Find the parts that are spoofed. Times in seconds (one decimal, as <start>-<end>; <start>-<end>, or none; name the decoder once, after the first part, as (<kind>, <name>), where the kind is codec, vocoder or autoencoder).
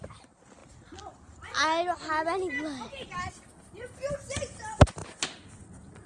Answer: none